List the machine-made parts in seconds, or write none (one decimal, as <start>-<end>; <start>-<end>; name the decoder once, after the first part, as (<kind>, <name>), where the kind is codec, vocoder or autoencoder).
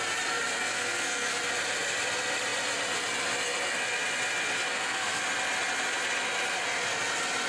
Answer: 0.5-1.4 (codec, SNAC); 4.7-5.2